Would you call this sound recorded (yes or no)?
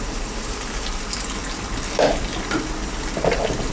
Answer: yes